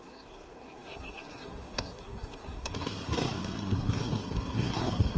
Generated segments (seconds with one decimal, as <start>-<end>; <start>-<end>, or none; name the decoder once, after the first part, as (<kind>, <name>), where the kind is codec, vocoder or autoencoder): 0.0-5.2 (codec, SNAC)